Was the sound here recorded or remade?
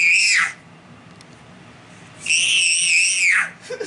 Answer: recorded